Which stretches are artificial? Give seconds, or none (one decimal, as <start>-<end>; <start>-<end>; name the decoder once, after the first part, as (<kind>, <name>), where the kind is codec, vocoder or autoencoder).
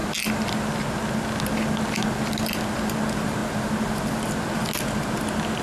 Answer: none